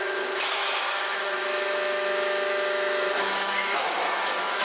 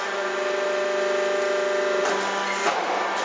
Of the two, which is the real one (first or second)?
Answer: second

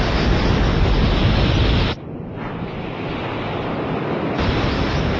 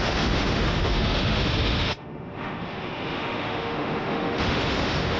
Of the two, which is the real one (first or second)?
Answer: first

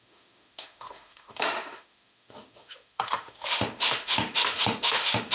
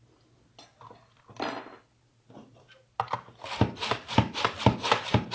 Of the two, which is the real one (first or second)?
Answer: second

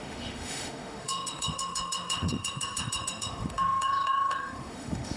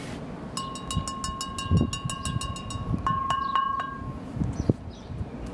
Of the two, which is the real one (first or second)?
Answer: second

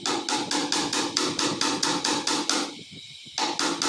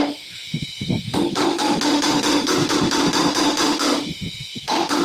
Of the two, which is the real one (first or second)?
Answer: first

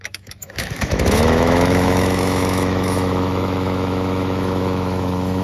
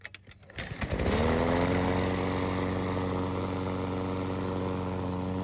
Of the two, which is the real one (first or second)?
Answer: second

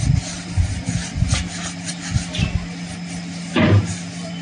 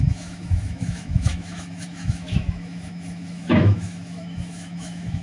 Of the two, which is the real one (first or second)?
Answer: first